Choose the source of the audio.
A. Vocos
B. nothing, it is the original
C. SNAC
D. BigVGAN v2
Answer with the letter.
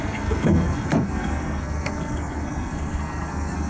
C